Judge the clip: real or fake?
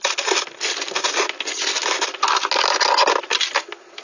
real